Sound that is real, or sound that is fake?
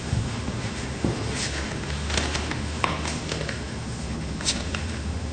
fake